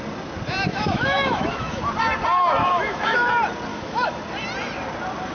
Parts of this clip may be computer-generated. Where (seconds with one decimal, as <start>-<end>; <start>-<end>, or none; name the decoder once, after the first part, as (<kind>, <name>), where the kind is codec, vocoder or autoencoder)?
0.7-1.8 (autoencoder, DAC-VAE); 2.6-3.3; 3.7-4.2